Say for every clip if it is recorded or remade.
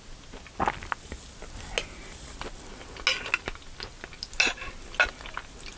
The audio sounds recorded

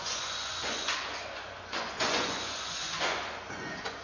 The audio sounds remade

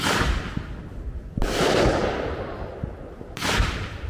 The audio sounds recorded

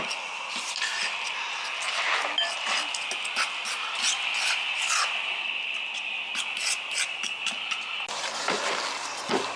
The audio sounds recorded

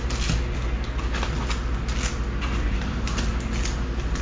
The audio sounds recorded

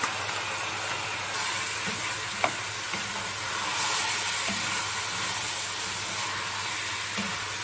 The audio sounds recorded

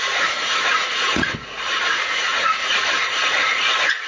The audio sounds remade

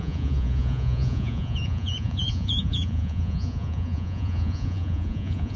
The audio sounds remade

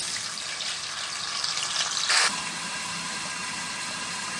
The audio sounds recorded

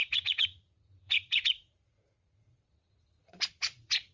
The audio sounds remade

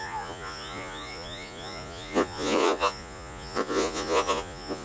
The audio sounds remade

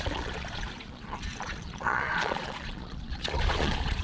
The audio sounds remade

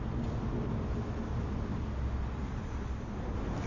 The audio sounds recorded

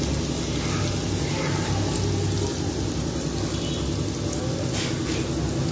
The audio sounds recorded